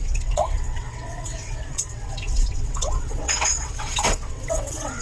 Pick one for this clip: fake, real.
fake